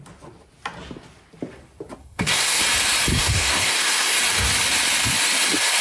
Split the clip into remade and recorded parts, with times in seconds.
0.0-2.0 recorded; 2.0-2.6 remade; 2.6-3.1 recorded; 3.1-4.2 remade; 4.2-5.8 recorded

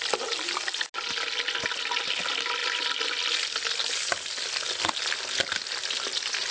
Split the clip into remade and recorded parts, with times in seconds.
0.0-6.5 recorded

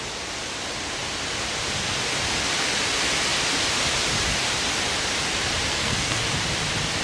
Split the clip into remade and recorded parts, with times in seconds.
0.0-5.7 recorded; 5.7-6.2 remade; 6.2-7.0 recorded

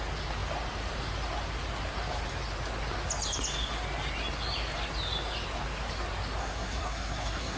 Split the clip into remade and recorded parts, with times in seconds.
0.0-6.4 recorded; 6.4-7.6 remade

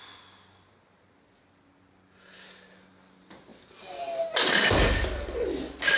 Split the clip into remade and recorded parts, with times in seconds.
0.0-6.0 recorded

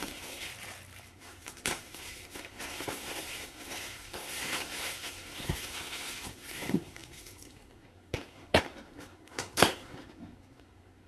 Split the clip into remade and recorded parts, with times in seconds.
0.0-0.5 remade; 0.5-1.1 recorded; 1.1-11.1 remade